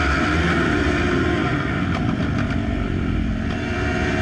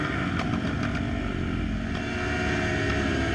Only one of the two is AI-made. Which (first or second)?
first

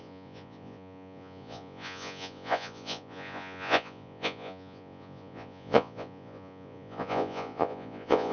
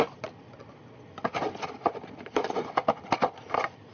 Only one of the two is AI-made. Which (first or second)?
first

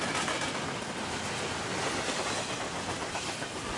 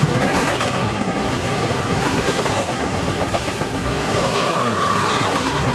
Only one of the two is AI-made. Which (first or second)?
second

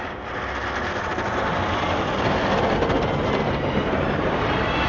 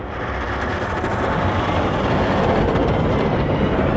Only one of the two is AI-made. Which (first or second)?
second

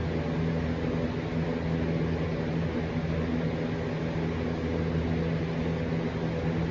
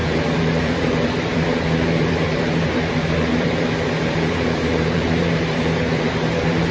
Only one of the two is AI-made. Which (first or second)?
second